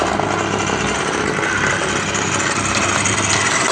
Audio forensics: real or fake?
real